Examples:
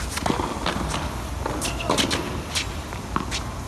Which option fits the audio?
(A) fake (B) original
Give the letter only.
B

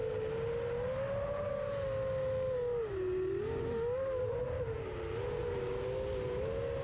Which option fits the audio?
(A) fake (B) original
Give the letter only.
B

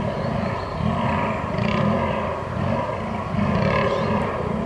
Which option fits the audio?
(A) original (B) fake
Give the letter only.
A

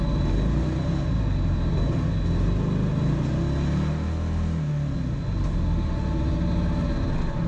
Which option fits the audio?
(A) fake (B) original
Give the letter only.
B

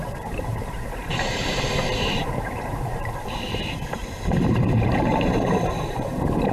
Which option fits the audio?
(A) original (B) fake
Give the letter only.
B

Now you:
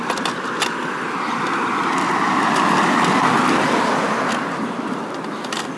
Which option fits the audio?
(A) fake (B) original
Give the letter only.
B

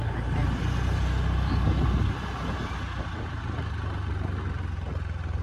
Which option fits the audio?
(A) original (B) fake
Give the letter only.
A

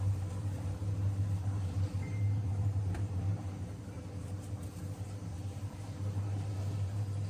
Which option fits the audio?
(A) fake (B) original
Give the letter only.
A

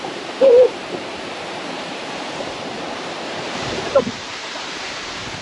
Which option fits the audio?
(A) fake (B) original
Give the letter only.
A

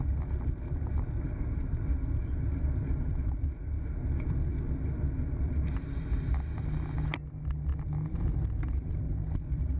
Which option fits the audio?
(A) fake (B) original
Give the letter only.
B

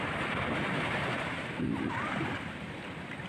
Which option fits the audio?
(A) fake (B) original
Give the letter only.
A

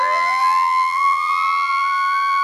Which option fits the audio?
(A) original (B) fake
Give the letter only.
B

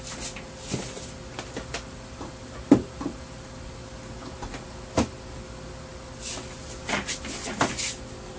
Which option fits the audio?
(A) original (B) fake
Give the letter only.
A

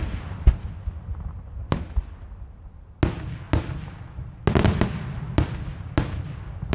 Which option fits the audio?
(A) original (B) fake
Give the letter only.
A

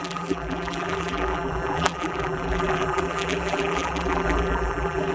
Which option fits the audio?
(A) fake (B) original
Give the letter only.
A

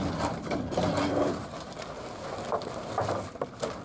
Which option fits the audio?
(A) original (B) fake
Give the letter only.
B